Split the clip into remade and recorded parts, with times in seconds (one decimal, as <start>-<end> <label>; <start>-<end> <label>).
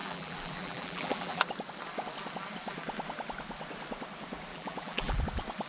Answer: 0.0-1.4 remade; 1.4-4.5 recorded; 4.5-5.2 remade; 5.2-5.7 recorded